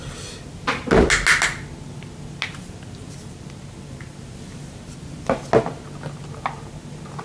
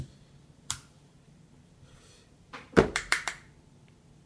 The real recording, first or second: first